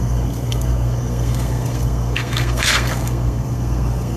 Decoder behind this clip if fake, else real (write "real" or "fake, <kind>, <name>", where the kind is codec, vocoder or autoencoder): fake, codec, SNAC